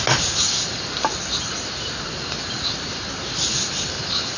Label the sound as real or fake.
real